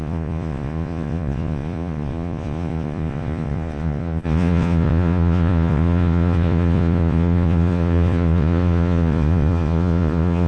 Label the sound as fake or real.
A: fake